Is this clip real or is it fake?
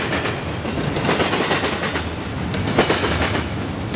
real